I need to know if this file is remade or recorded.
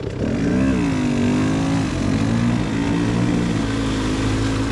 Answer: recorded